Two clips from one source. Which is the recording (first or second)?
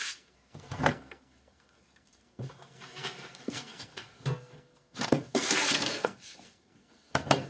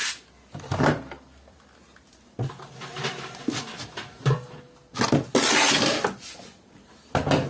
second